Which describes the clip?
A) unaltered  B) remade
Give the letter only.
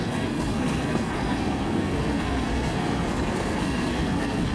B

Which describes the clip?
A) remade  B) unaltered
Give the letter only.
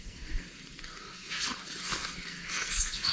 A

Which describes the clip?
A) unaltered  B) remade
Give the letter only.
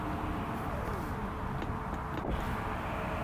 A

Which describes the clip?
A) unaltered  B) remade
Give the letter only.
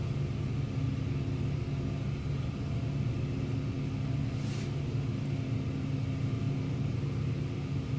A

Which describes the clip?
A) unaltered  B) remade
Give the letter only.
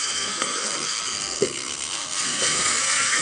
B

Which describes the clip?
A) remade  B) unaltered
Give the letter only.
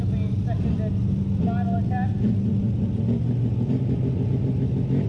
B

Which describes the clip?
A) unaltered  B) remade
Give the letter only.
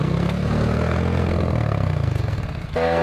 B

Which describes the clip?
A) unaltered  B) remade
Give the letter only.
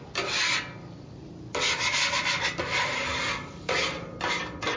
A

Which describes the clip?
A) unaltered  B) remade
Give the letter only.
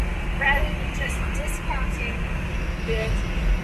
A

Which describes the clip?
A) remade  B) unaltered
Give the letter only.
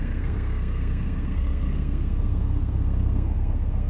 A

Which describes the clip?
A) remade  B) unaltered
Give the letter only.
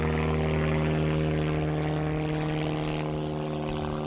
B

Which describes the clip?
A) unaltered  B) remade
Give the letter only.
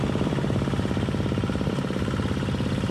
A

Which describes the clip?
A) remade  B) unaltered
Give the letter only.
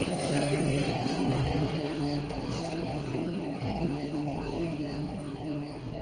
A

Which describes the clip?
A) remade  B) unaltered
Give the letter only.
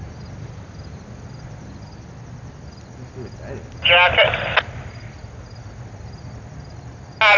B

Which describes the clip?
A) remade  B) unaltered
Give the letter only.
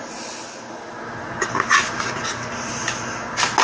B